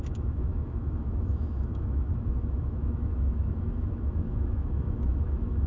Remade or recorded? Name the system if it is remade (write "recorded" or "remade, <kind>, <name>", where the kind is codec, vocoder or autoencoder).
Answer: remade, autoencoder, DAC-VAE